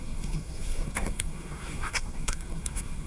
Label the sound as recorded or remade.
remade